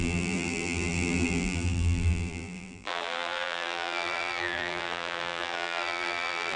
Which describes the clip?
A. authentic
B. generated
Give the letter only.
B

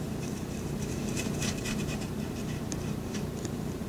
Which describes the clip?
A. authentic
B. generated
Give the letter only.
B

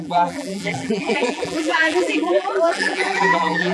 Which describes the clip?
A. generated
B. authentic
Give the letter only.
A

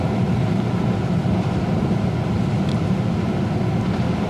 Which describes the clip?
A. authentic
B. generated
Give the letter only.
A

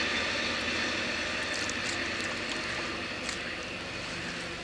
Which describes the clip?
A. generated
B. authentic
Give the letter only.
B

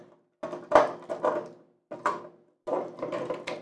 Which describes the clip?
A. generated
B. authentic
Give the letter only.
B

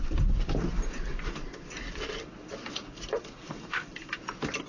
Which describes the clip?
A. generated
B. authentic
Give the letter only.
A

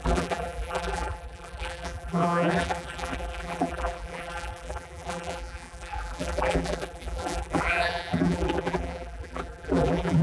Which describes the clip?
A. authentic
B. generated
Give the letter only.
B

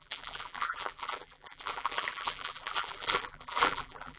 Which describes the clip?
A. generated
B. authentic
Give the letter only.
A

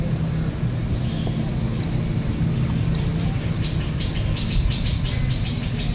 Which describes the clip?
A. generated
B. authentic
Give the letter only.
B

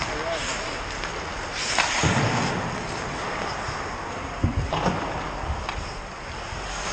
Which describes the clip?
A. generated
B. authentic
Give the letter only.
B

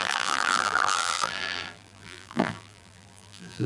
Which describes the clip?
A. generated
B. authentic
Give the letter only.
A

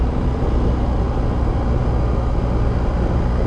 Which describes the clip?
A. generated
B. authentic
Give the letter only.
B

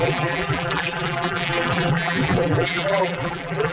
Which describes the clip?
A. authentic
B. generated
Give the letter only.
B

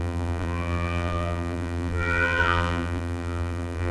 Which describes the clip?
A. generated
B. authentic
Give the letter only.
A